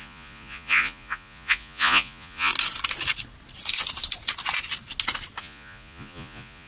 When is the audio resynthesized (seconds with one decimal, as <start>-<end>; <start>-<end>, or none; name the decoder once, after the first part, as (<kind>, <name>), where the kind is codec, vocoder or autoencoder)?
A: 0.0-2.5 (vocoder, Vocos); 5.4-6.7